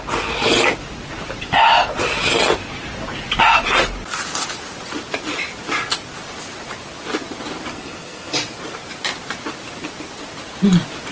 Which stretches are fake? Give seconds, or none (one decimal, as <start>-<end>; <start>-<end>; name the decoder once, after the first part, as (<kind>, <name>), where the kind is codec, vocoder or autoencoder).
7.7-8.3 (codec, SNAC)